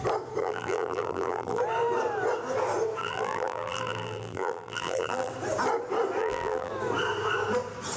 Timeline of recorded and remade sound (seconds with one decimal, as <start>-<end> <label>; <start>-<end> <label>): 0.0-0.4 recorded; 0.4-1.6 remade; 1.6-3.0 recorded; 3.0-5.3 remade; 5.3-6.2 recorded; 6.2-6.7 remade; 6.7-8.0 recorded